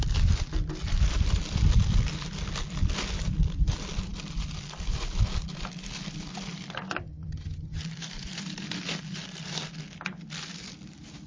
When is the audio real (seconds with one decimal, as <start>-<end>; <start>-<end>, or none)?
0.0-7.0; 7.8-11.3